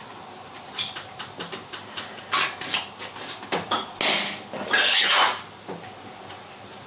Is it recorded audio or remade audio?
recorded